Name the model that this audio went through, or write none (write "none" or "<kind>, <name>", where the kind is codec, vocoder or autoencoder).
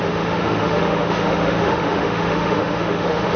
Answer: autoencoder, DAC-VAE